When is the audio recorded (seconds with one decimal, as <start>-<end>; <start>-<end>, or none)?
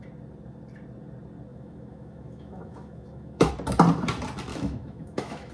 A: 0.0-1.5; 3.5-4.5